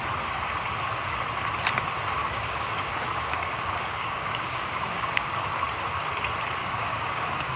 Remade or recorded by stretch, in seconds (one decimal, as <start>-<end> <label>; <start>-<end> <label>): 0.0-2.2 recorded; 2.2-5.6 remade; 5.6-6.6 recorded; 6.6-7.6 remade